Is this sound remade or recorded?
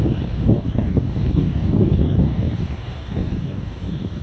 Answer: remade